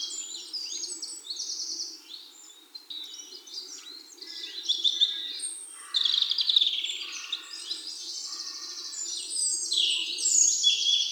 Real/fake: fake